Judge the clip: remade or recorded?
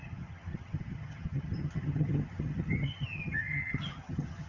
remade